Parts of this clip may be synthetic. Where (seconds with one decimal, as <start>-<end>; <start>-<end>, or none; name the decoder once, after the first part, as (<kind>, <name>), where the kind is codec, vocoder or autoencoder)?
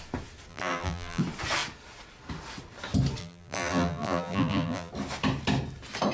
0.5-1.2 (vocoder, BigVGAN v2); 3.2-4.9